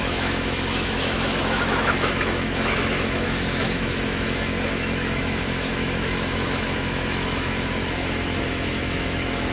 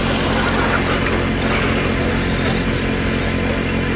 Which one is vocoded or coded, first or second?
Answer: first